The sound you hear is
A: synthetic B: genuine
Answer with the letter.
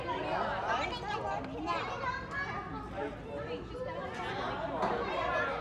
B